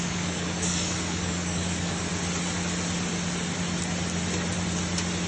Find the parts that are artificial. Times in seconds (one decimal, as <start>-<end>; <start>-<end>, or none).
0.0-2.1

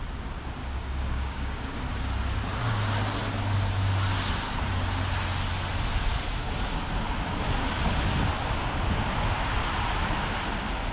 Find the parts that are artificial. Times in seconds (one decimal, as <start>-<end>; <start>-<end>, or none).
0.6-1.8